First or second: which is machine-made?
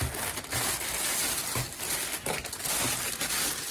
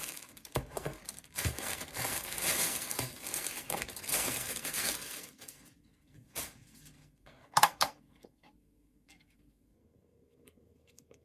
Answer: second